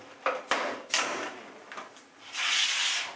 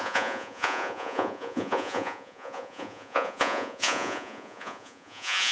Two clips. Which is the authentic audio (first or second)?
first